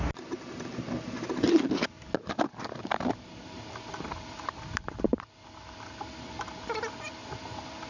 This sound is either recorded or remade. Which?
recorded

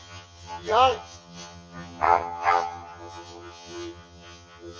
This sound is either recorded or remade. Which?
remade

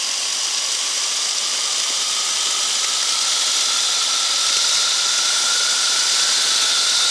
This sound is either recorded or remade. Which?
recorded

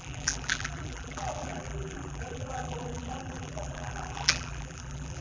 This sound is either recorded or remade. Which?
remade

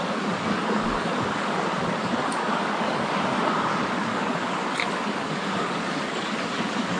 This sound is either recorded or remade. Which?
remade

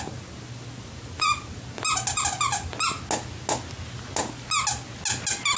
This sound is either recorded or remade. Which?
recorded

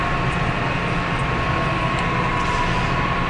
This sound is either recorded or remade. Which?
recorded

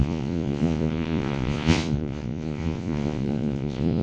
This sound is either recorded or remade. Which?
remade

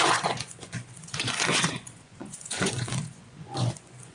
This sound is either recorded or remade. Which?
remade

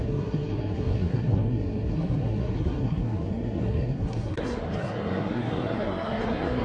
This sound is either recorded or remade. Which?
remade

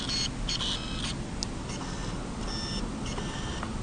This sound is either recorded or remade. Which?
recorded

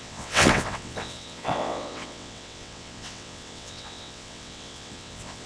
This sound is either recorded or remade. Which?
remade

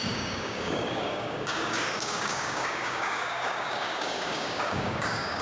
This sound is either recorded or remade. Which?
remade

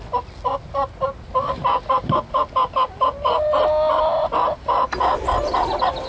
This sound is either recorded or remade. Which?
recorded